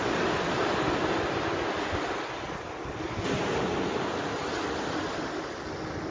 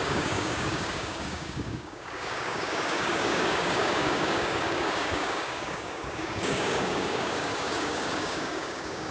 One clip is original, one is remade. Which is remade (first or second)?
second